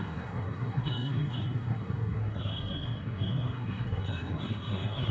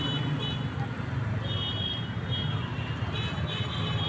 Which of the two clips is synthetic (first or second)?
first